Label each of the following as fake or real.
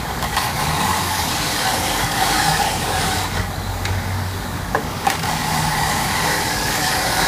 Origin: fake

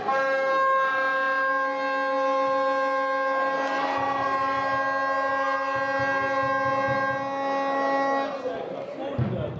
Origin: real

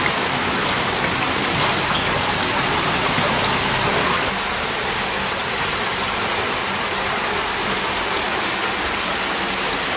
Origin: real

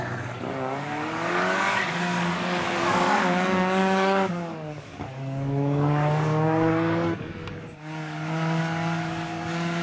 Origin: fake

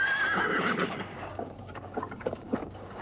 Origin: fake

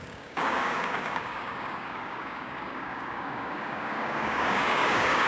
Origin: fake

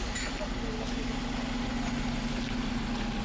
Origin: real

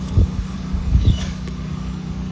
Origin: fake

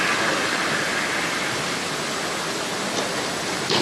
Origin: real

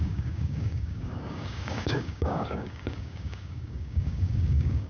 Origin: fake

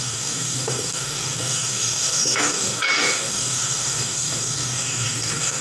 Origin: fake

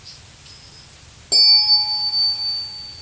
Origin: real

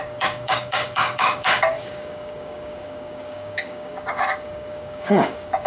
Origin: fake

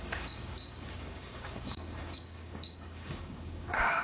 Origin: fake